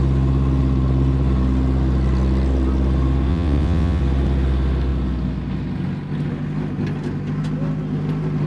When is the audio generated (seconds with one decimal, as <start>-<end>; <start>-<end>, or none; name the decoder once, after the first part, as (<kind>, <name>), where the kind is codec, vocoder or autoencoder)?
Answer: 3.3-4.0 (vocoder, WaveNeXt)